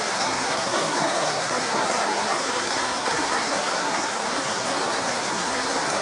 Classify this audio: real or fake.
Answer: fake